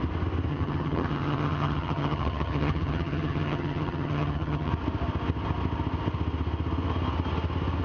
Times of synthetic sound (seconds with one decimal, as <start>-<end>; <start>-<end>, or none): 0.5-4.7